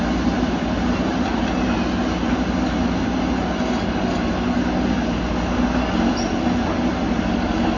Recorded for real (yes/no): yes